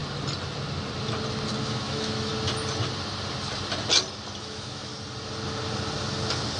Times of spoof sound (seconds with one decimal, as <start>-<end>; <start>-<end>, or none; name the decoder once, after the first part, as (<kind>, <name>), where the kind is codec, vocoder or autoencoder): 1.6-2.3 (autoencoder, DAC-VAE); 4.4-4.9

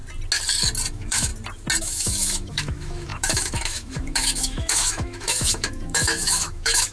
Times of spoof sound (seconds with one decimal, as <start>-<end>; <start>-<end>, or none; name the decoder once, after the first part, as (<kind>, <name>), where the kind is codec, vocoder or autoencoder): 0.9-1.3 (autoencoder, DAC-VAE); 1.8-6.9

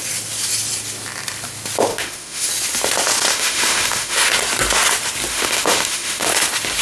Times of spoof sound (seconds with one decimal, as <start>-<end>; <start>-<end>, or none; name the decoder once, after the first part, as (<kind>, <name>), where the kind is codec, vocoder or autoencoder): 1.9-2.5 (autoencoder, DAC-VAE); 3.3-4.3; 5.3-6.3

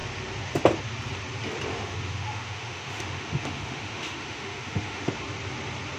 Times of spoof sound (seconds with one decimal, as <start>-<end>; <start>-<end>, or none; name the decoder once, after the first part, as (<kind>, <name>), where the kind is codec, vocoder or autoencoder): 1.7-5.1 (autoencoder, DAC-VAE)